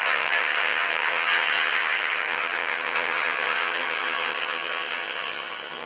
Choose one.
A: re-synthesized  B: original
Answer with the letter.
A